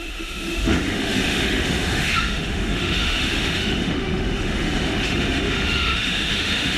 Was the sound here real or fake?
fake